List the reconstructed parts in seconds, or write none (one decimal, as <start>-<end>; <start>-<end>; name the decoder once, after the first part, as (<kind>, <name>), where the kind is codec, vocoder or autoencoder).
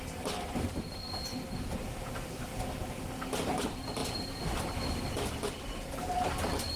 0.0-2.5 (vocoder, BigVGAN v2); 3.5-6.8